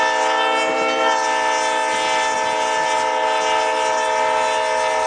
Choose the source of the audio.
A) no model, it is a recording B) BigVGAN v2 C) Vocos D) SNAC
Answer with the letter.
A